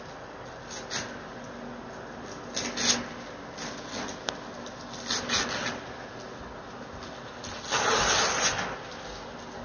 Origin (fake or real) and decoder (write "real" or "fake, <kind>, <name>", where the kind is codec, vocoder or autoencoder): real